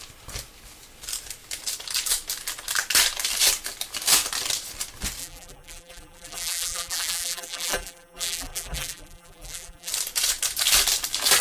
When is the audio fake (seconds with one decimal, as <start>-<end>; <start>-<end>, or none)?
5.2-9.9